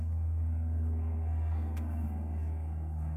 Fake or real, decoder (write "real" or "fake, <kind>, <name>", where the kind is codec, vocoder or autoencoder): fake, codec, SNAC